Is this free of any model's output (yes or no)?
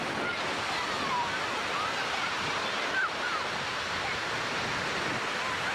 yes